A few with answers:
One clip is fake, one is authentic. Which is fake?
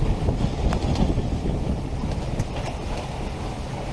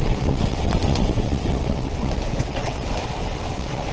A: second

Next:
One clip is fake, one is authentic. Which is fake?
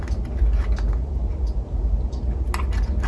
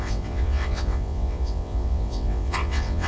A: second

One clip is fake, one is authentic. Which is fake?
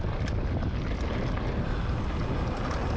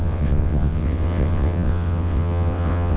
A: second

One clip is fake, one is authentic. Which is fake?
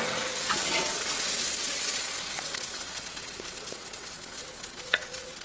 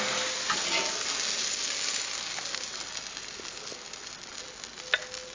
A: first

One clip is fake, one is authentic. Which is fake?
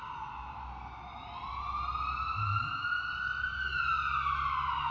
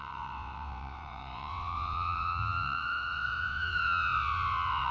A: second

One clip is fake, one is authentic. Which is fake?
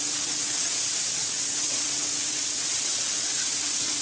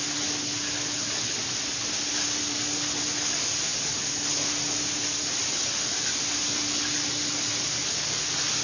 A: first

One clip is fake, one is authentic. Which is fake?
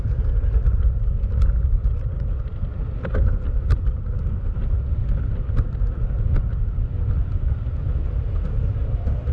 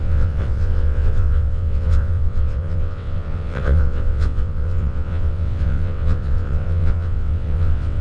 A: second